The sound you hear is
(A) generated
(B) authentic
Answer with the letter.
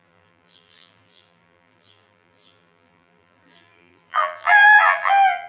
A